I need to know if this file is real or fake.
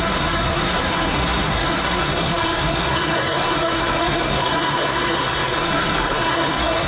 fake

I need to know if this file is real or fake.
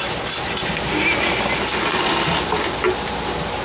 real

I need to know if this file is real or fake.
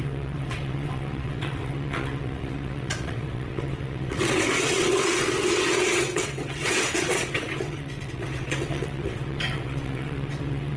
fake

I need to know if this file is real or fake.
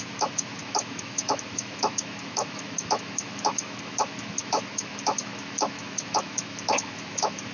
fake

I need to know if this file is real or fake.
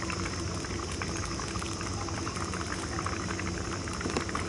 real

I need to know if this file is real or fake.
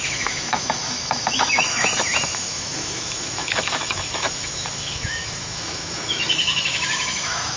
fake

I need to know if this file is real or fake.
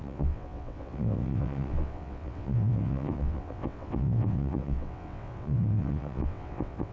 fake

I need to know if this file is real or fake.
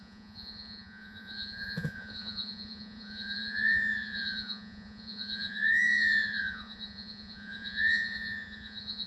fake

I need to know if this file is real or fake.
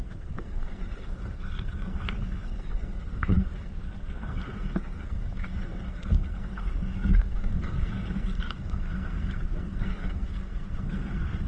fake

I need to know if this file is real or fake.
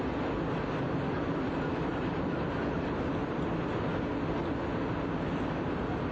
real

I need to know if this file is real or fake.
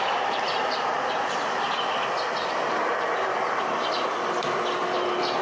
real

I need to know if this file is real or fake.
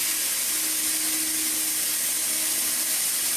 real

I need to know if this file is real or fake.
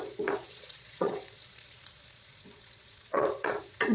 fake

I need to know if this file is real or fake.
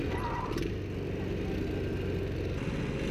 real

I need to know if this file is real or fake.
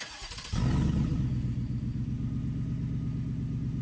real